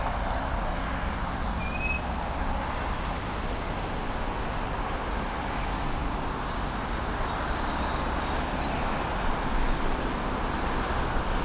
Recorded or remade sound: recorded